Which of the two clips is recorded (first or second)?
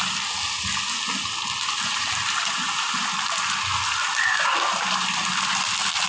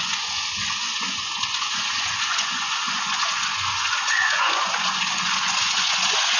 first